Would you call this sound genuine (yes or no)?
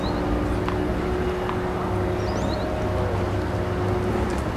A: yes